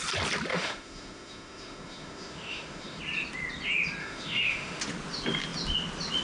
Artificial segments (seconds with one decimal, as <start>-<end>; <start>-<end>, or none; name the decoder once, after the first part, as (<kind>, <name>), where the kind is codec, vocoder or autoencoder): 0.5-3.0 (autoencoder, DAC-VAE); 4.0-4.8